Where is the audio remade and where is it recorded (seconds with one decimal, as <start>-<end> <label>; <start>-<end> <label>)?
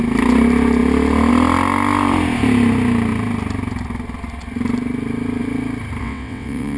0.0-6.0 recorded; 6.0-6.8 remade